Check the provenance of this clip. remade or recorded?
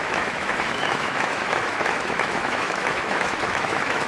remade